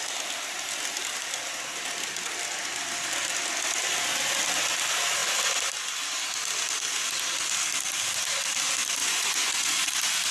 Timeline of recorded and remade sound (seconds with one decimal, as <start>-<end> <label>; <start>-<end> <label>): 0.0-9.0 recorded; 9.0-9.9 remade; 9.9-10.3 recorded